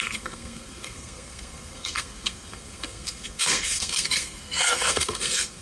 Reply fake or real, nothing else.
fake